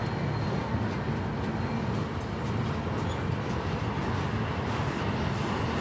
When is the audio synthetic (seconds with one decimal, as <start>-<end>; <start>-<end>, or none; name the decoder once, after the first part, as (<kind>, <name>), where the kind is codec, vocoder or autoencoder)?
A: none